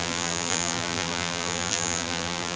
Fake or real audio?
fake